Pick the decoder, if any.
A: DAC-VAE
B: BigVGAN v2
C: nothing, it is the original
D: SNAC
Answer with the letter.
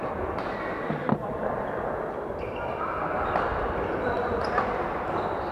B